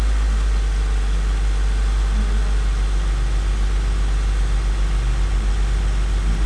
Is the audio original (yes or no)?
yes